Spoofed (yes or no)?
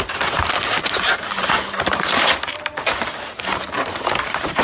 yes